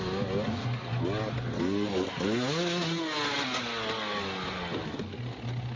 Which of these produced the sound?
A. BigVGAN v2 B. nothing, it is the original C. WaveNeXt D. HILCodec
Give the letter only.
B